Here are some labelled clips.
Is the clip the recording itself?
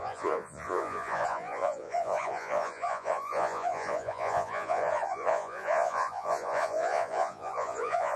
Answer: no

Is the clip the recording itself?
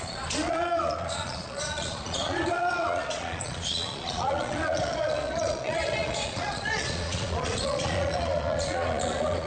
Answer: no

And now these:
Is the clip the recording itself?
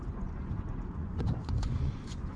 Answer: no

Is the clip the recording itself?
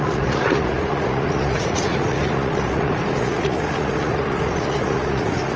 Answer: no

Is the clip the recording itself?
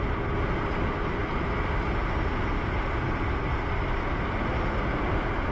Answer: yes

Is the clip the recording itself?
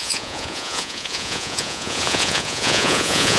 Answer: no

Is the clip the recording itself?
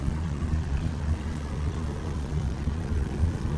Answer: no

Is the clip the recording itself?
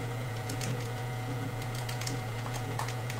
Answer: no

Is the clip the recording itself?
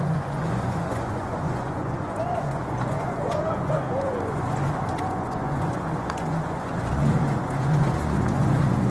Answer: no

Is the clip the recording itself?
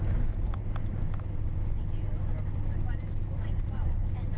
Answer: yes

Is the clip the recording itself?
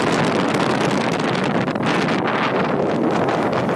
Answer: yes